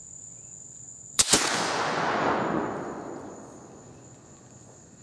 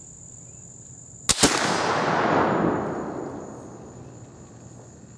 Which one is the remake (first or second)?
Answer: first